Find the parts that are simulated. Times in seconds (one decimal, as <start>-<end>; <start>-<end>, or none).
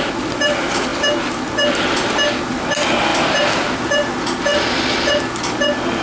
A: none